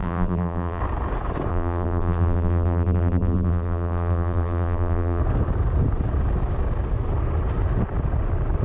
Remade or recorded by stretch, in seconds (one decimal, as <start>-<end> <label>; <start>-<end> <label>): 0.0-0.8 remade; 0.8-1.5 recorded; 1.5-5.2 remade; 5.2-8.6 recorded